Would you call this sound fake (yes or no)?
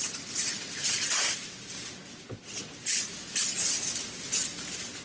no